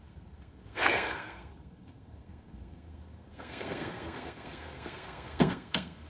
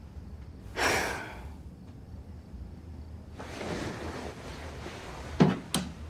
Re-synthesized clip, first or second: first